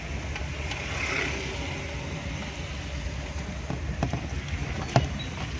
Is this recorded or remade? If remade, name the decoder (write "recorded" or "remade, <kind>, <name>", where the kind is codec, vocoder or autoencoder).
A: recorded